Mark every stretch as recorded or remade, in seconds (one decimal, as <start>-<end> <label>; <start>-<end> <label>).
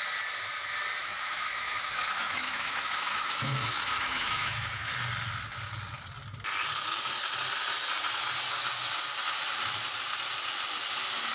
0.0-1.0 recorded; 1.0-4.9 remade; 4.9-11.3 recorded